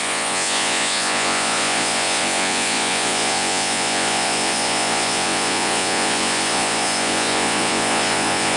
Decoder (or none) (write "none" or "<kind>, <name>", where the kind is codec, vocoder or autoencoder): vocoder, Vocos